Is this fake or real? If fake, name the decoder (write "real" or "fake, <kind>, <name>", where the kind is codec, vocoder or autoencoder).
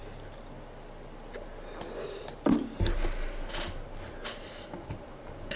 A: real